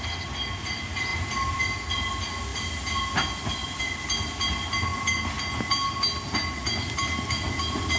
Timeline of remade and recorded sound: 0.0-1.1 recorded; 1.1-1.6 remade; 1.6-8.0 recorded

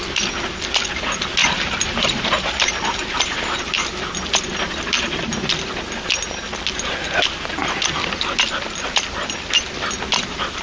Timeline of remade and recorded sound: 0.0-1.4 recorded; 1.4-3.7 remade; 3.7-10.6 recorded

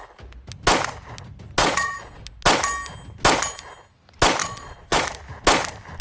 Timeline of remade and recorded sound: 0.0-1.6 recorded; 1.6-2.2 remade; 2.2-4.4 recorded; 4.4-5.0 remade; 5.0-6.0 recorded

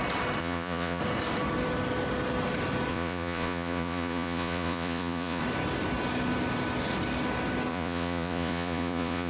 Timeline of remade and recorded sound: 0.0-0.4 recorded; 0.4-1.0 remade; 1.0-2.9 recorded; 2.9-5.4 remade; 5.4-7.7 recorded; 7.7-9.3 remade

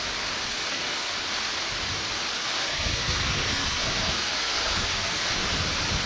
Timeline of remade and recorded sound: 0.0-0.5 recorded; 0.5-1.1 remade; 1.1-2.4 recorded; 2.4-5.3 remade; 5.3-6.1 recorded

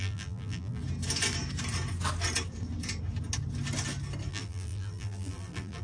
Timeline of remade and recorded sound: 0.0-0.8 remade; 0.8-4.3 recorded; 4.3-5.8 remade